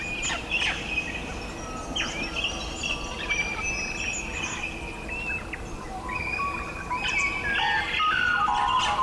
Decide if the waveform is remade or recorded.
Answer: recorded